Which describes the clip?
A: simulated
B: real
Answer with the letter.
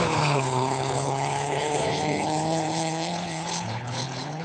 A